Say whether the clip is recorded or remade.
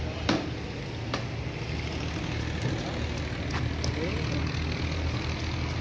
recorded